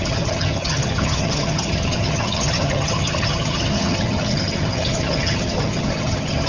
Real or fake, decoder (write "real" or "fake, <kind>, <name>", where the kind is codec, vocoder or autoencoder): fake, vocoder, HiFi-GAN